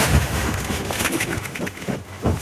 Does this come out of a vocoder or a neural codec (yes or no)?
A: yes